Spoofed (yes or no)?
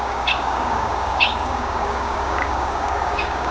yes